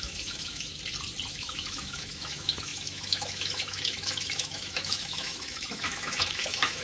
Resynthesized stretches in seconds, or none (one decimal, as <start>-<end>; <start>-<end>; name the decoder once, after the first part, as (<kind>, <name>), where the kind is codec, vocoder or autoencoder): 0.0-0.7 (autoencoder, DAC-VAE); 1.3-6.8